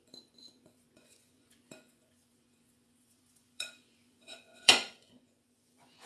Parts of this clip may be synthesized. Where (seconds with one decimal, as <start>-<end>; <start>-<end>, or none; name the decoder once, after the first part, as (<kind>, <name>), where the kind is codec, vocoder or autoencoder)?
0.0-6.1 (vocoder, Vocos)